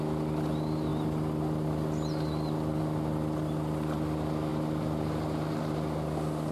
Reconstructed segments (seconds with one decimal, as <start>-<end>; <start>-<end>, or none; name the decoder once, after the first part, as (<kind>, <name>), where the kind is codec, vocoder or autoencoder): none